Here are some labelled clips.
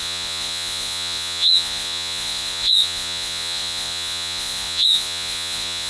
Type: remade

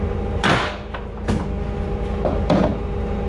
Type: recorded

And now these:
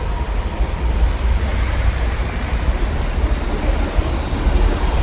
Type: recorded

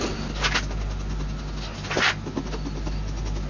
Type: recorded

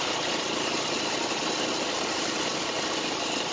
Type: recorded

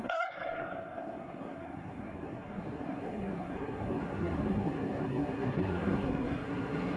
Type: remade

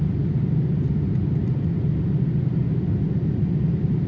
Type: recorded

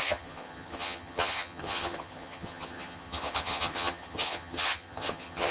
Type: remade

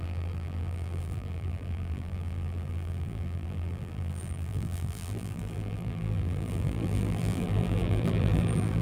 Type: remade